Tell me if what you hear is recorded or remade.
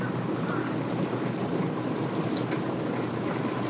recorded